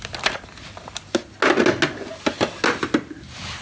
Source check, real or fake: real